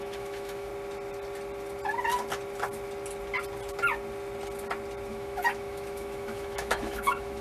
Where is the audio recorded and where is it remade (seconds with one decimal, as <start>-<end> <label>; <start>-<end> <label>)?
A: 0.0-0.7 remade; 0.7-5.1 recorded; 5.1-7.4 remade